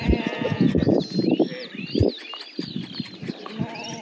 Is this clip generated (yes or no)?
no